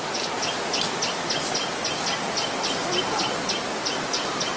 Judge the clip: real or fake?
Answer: real